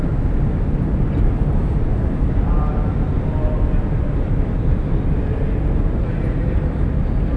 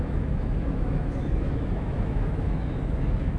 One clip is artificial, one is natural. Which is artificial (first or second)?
second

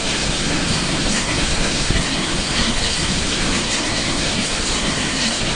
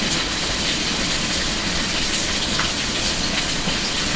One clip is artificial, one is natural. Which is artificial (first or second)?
first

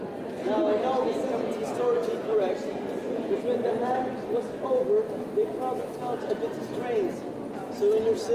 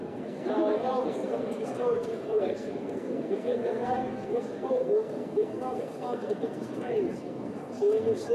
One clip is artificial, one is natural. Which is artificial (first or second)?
second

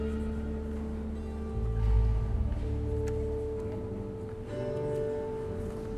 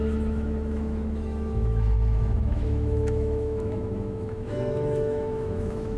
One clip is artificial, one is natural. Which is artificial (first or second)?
second